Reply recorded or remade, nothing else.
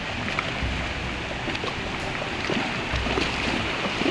recorded